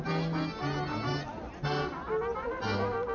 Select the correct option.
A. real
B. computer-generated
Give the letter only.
A